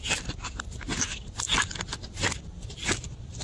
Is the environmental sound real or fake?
real